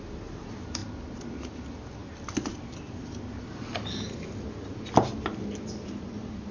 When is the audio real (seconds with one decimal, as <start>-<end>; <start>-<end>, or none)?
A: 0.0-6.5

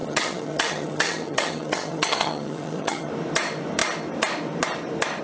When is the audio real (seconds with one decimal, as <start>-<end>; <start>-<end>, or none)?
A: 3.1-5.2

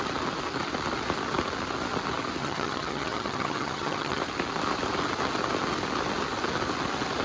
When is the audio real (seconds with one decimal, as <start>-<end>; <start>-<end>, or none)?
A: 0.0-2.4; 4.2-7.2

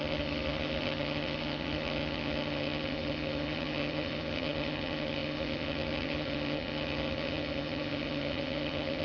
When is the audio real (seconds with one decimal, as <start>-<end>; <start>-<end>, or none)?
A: none

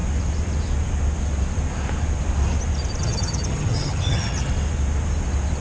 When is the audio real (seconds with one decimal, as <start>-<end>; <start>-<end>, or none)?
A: 0.0-3.0; 4.5-5.6